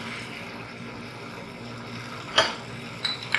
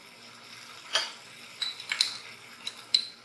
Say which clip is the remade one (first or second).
second